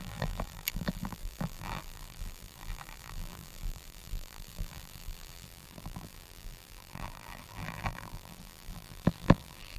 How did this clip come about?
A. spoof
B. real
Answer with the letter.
A